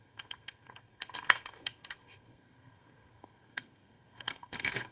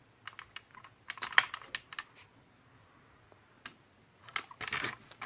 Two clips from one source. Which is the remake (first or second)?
first